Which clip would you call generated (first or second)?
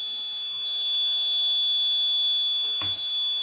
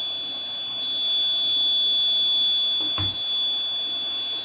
first